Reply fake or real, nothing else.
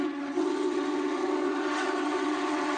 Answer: fake